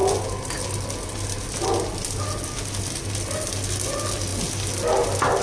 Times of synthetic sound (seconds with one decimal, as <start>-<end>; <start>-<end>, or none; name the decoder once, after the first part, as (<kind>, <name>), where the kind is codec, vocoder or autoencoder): none